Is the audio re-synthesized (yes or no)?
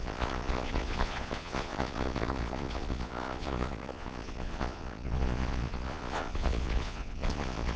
yes